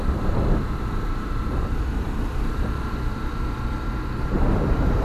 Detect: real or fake fake